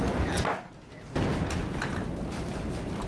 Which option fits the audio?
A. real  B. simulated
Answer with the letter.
A